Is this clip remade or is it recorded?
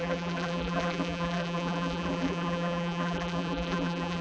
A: remade